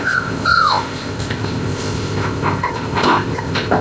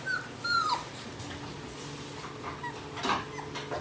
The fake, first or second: first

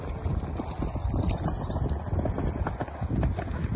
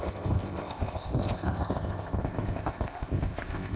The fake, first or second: second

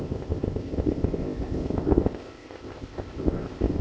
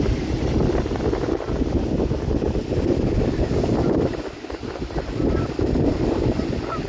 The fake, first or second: first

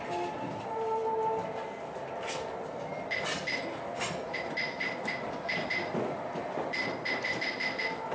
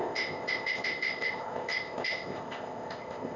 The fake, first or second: second